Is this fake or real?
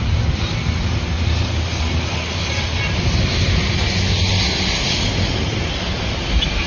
real